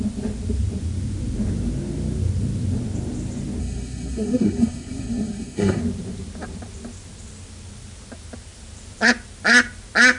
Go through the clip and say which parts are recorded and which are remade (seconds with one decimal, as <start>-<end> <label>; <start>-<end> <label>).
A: 0.0-3.6 recorded; 3.6-5.8 remade; 5.8-10.2 recorded